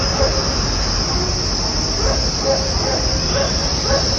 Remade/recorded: recorded